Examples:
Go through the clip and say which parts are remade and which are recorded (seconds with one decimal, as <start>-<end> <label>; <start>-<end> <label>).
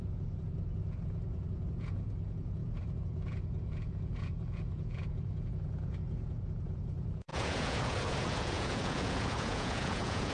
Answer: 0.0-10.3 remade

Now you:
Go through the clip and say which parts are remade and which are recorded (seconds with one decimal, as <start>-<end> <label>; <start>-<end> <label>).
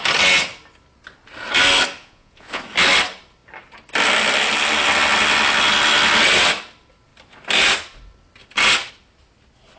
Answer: 0.0-2.0 recorded; 2.0-2.6 remade; 2.6-9.8 recorded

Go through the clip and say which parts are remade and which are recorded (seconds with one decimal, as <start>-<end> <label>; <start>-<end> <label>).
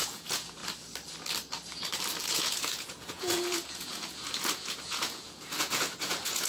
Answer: 0.0-0.6 remade; 0.6-2.2 recorded; 2.2-6.5 remade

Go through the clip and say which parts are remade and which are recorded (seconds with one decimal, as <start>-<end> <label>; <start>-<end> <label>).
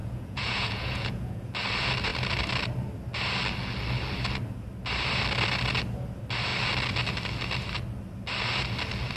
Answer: 0.0-1.5 remade; 1.5-9.2 recorded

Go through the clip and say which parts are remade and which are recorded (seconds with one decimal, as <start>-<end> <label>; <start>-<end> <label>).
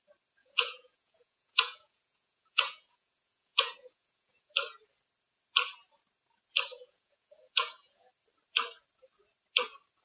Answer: 0.0-0.4 recorded; 0.4-4.5 remade; 4.5-6.7 recorded; 6.7-8.1 remade; 8.1-10.0 recorded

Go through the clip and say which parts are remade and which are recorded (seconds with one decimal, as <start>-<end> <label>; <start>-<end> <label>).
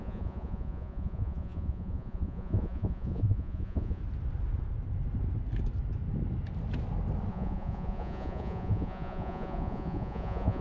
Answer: 0.0-4.0 remade; 4.0-7.3 recorded; 7.3-10.6 remade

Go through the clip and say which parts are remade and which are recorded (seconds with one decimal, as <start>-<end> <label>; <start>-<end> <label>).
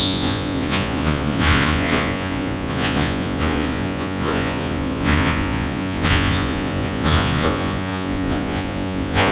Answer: 0.0-9.3 remade